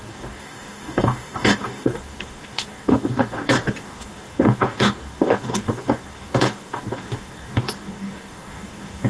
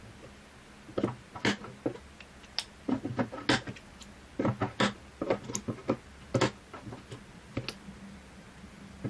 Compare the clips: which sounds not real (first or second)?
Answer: first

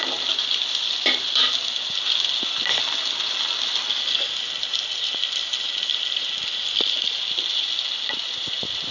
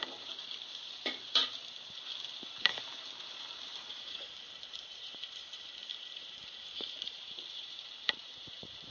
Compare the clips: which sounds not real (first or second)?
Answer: second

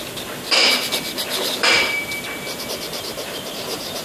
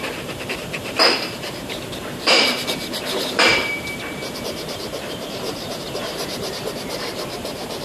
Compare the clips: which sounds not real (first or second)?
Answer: second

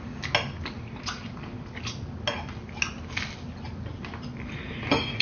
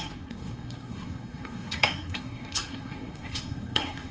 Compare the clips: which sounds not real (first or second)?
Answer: second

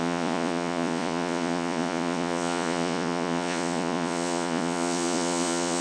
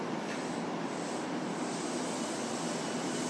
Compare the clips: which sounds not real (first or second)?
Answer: first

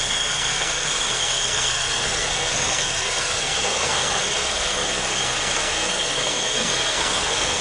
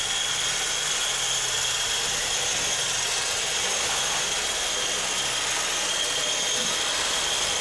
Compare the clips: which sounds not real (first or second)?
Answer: first